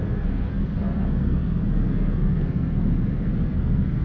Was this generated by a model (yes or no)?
yes